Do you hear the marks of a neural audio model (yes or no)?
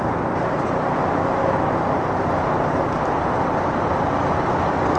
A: no